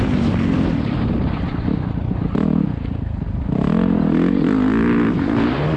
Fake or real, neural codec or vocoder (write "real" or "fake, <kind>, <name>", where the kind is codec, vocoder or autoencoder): real